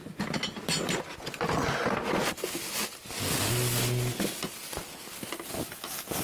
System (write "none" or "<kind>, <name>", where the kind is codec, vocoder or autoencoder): none